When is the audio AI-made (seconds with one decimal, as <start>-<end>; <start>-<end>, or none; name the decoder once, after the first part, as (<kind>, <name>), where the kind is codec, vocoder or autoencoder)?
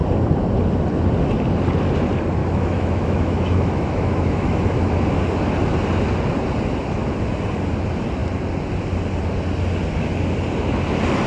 2.4-4.9 (autoencoder, DAC-VAE)